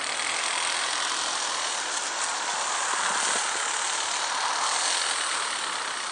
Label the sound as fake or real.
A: real